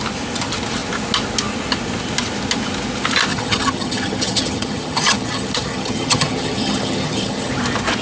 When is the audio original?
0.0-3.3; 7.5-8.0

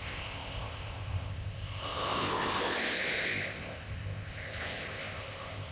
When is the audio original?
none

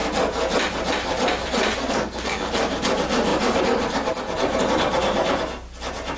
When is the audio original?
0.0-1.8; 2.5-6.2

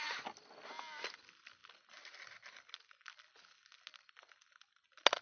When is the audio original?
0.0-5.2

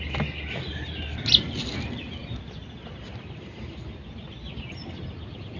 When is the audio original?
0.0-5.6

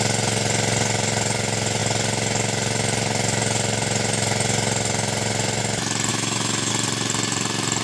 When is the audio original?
0.0-6.1; 6.7-7.8

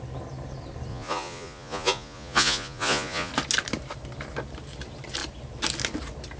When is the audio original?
0.0-0.9; 3.3-6.4

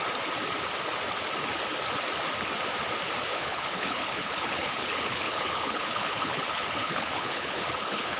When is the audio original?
0.0-3.3